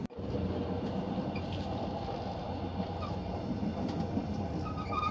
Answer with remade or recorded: recorded